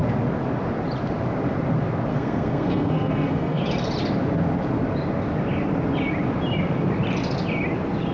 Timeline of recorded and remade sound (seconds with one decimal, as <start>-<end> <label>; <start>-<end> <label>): 0.0-2.1 recorded; 2.1-3.6 remade; 3.6-8.1 recorded